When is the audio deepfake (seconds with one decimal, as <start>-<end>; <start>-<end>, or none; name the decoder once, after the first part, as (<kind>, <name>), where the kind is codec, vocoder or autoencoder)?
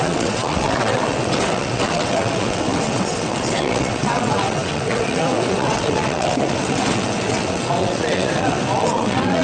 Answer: 0.0-9.4 (vocoder, WaveNeXt)